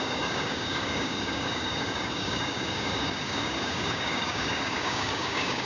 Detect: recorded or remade remade